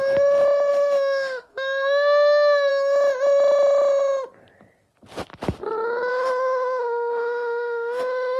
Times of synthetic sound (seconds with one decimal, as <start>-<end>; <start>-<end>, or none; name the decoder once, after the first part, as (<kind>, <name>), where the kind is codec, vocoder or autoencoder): 0.7-2.7 (autoencoder, DAC-VAE); 6.1-8.4